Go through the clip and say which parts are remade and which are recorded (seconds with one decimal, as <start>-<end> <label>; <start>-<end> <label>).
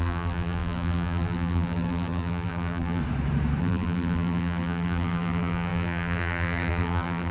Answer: 0.0-3.0 remade; 3.0-3.6 recorded; 3.6-7.3 remade